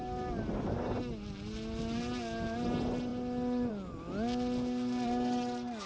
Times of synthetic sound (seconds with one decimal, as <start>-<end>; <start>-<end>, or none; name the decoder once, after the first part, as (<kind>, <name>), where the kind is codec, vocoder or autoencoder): none